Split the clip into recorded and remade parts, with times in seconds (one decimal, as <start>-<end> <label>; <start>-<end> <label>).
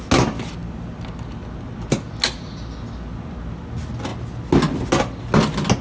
0.0-5.8 recorded